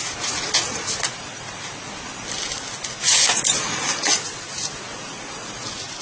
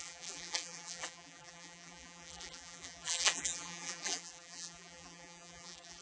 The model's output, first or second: second